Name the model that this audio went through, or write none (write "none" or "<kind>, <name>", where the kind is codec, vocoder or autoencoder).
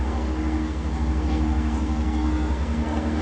codec, SNAC